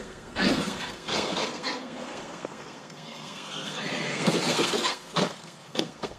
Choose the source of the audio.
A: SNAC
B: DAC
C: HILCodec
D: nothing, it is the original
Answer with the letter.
A